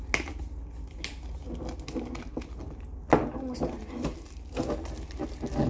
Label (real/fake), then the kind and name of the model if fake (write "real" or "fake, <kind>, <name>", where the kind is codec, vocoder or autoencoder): real